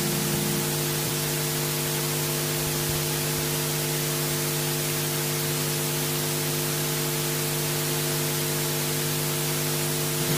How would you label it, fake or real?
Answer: real